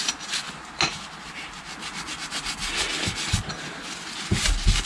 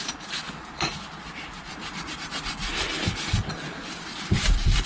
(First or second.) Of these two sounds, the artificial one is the second